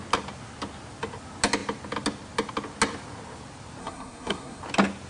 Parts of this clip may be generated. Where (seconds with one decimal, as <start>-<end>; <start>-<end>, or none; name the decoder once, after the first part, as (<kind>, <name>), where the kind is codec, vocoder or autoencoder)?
3.8-4.6 (codec, SNAC)